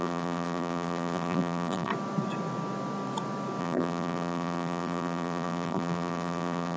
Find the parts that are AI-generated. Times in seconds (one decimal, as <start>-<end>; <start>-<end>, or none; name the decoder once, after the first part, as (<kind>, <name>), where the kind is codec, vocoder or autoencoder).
0.0-1.9 (vocoder, BigVGAN v2); 3.6-6.8

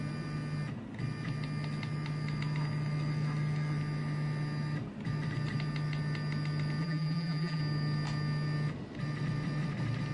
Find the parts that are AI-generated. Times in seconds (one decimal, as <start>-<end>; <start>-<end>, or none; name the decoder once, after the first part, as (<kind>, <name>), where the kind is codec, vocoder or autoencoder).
6.8-7.6 (vocoder, BigVGAN v2)

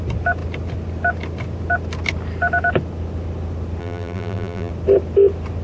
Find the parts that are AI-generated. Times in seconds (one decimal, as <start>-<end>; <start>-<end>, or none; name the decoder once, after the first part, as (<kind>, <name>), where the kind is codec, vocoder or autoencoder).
3.8-4.7 (vocoder, BigVGAN v2)

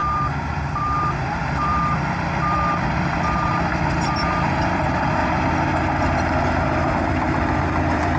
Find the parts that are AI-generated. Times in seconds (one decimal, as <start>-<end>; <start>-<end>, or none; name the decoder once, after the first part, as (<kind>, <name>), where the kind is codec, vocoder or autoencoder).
0.0-5.2 (vocoder, BigVGAN v2); 6.9-8.2